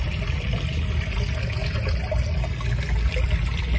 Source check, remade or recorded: recorded